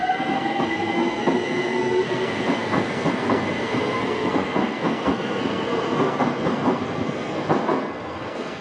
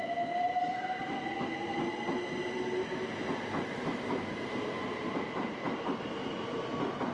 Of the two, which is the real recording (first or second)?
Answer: second